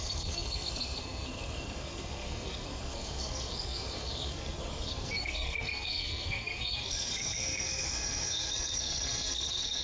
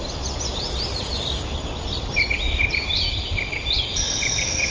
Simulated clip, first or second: first